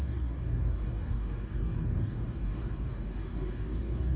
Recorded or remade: remade